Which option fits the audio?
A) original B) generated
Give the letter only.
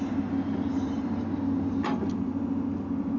A